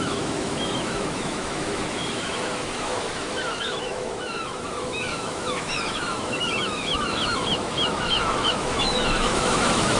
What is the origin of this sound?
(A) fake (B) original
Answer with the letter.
A